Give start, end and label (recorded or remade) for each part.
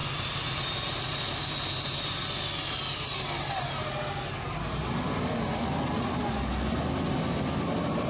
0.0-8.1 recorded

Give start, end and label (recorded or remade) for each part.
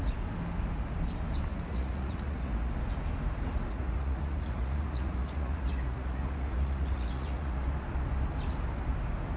0.0-1.5 recorded; 1.5-2.7 remade; 2.7-3.7 recorded; 3.7-7.6 remade; 7.6-9.4 recorded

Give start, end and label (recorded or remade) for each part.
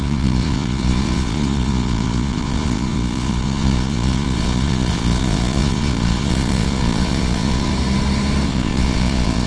0.0-7.7 remade; 7.7-8.5 recorded; 8.5-9.5 remade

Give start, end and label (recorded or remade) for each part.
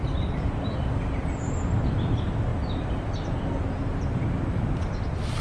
0.0-5.4 recorded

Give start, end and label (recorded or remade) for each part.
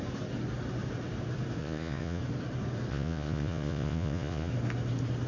0.0-1.6 recorded; 1.6-2.2 remade; 2.2-2.9 recorded; 2.9-4.5 remade; 4.5-5.3 recorded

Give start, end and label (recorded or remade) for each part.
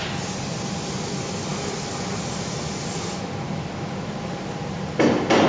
0.0-5.5 recorded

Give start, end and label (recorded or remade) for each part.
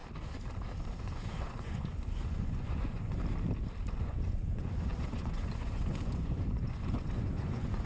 0.0-1.0 recorded; 1.0-3.2 remade; 3.2-4.0 recorded; 4.0-7.9 remade